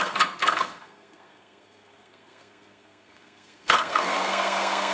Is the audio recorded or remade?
remade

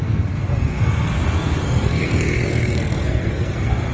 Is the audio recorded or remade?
remade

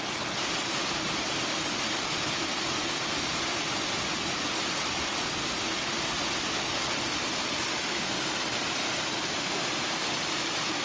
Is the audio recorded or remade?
recorded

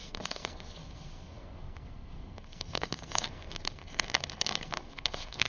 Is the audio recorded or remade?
remade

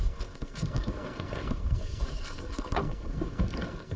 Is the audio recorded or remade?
remade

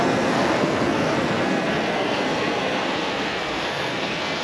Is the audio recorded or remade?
remade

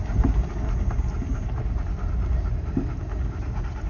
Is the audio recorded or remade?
recorded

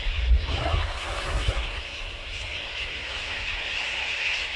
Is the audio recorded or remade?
remade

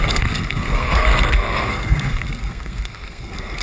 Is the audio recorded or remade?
remade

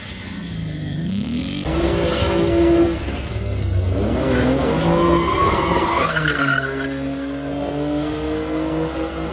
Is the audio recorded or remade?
remade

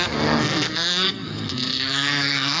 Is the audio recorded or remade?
remade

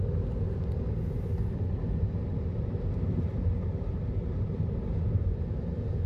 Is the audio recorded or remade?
recorded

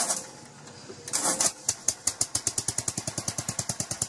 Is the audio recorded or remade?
recorded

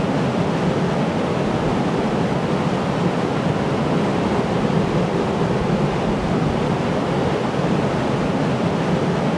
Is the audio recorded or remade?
recorded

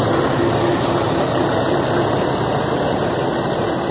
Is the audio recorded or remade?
recorded